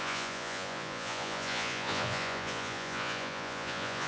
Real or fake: fake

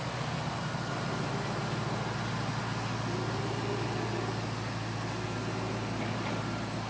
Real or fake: real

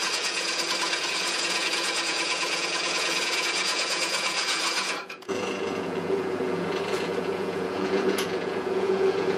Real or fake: fake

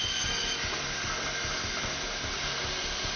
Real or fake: real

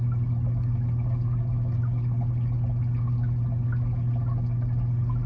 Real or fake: real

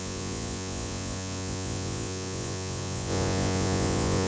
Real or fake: fake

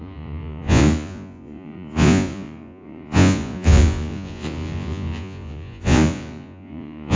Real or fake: fake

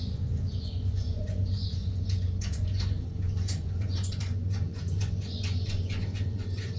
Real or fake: fake